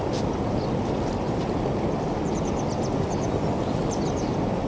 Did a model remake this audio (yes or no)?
no